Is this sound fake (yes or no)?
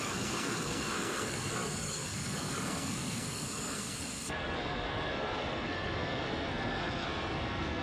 yes